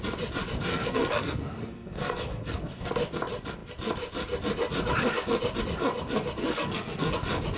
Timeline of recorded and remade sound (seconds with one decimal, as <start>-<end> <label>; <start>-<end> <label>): 0.0-0.7 recorded; 0.7-2.9 remade; 2.9-6.4 recorded; 6.4-7.1 remade; 7.1-7.6 recorded